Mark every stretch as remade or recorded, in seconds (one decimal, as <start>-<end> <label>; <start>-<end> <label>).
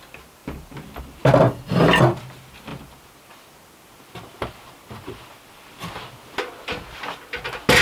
0.0-7.8 recorded